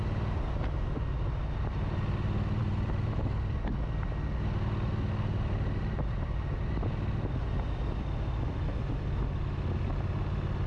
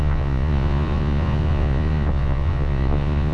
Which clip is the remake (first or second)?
second